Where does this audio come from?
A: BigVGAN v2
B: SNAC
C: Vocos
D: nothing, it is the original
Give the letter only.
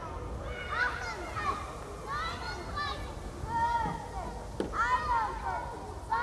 D